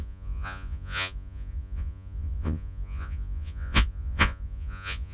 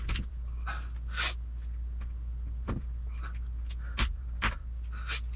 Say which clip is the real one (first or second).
second